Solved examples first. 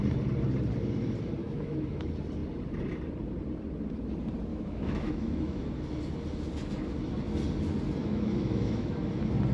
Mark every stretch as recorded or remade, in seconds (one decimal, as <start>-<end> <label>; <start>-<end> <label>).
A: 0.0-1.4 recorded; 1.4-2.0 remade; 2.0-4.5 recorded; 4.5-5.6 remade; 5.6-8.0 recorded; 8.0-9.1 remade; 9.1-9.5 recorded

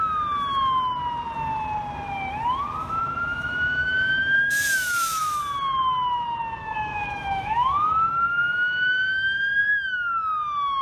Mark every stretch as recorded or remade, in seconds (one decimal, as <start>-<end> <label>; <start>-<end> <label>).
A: 0.0-2.8 recorded; 2.8-5.4 remade; 5.4-6.6 recorded; 6.6-9.6 remade; 9.6-10.8 recorded

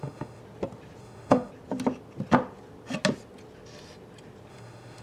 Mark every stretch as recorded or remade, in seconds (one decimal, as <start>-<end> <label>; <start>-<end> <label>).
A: 0.0-0.4 remade; 0.4-1.0 recorded; 1.0-1.5 remade; 1.5-4.5 recorded; 4.5-5.0 remade

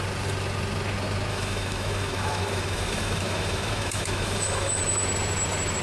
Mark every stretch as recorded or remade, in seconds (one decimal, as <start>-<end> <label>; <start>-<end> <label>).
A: 0.0-1.3 recorded; 1.3-4.8 remade; 4.8-5.8 recorded

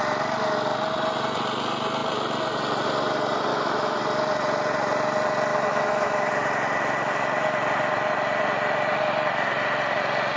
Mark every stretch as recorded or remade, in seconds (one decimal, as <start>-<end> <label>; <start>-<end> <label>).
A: 0.0-3.5 recorded; 3.5-4.0 remade; 4.0-5.5 recorded; 5.5-6.3 remade; 6.3-10.4 recorded